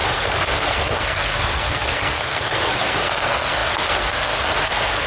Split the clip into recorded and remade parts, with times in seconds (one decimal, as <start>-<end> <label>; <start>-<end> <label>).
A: 0.0-5.1 remade